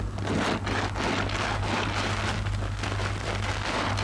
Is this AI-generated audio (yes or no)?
no